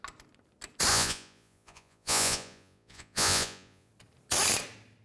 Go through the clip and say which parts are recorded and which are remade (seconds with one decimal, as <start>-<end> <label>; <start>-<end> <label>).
0.0-0.9 recorded; 0.9-3.9 remade; 3.9-5.0 recorded

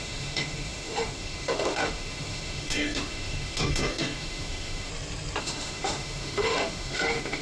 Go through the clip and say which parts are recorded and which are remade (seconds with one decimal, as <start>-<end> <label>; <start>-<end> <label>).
0.0-4.9 remade; 4.9-5.4 recorded; 5.4-7.4 remade